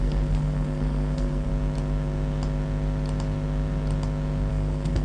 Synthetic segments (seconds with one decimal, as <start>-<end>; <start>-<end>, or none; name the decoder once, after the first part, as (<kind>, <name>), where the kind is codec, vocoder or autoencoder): 0.0-1.5 (codec, SNAC); 4.5-5.0